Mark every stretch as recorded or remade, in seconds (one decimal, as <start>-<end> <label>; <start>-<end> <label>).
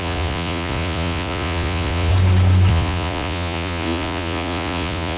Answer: 0.0-2.1 remade; 2.1-2.7 recorded; 2.7-5.2 remade